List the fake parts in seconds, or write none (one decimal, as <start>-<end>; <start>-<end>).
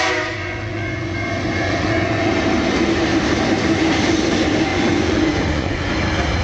0.4-2.3; 4.7-5.9